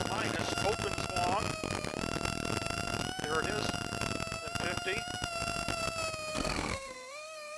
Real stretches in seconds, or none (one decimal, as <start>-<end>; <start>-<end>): 0.0-6.3

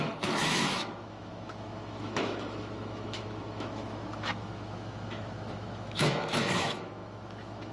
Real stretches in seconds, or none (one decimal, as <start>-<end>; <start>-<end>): none